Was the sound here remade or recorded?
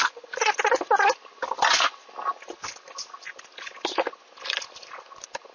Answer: recorded